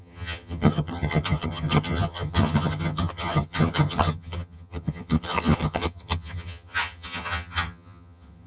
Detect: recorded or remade remade